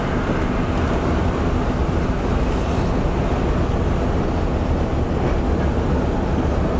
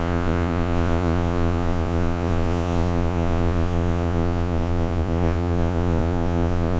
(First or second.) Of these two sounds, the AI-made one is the second